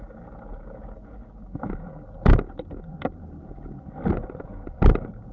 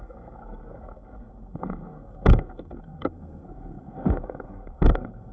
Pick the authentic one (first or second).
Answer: first